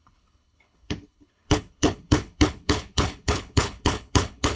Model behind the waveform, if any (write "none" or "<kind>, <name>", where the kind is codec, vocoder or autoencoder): codec, HILCodec